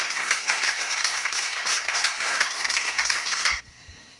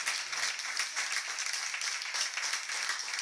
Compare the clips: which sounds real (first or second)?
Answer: second